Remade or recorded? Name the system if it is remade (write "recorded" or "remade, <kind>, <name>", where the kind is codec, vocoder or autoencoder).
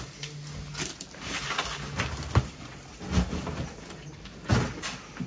recorded